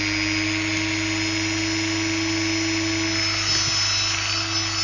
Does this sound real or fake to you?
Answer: real